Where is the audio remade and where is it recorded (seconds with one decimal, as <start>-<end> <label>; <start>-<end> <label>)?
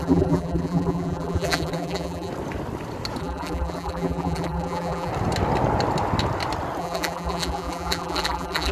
0.0-2.3 remade; 2.3-3.2 recorded; 3.2-5.1 remade; 5.1-6.8 recorded; 6.8-8.7 remade